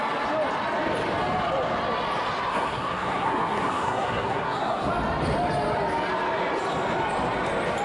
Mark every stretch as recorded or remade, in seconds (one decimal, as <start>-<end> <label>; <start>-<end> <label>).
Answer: 0.0-2.5 recorded; 2.5-4.9 remade; 4.9-7.8 recorded